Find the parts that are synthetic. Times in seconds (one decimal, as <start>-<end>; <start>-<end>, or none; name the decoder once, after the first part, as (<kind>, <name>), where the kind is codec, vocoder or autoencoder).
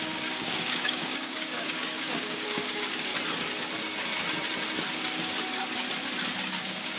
0.0-3.1 (codec, DAC); 6.6-7.0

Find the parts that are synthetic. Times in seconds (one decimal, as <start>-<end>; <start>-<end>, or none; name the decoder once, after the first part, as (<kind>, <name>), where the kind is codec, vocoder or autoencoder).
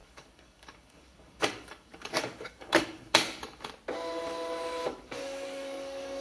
0.0-3.7 (codec, DAC); 4.9-6.2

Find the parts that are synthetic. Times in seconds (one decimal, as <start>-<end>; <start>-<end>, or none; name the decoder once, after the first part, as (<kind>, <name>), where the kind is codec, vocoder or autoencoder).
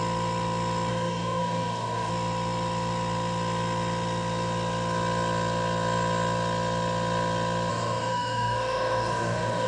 0.9-2.1 (codec, DAC); 7.7-9.7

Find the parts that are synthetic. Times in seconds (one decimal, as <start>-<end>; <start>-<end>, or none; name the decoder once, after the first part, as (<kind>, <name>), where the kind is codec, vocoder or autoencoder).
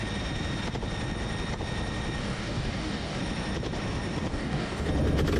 2.2-3.2 (codec, DAC); 4.3-4.9